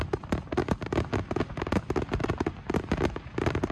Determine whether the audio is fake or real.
real